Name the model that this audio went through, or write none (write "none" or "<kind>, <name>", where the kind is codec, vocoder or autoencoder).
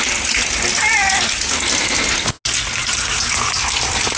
none